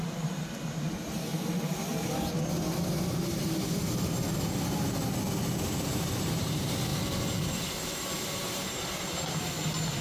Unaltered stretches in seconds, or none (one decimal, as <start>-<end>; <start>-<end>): 1.3-3.0; 3.4-5.5; 6.9-8.2